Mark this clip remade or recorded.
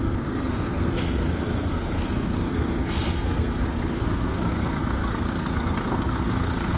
remade